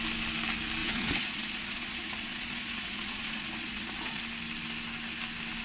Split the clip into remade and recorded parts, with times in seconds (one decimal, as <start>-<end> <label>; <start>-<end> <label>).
0.0-0.8 recorded; 0.8-4.2 remade; 4.2-5.6 recorded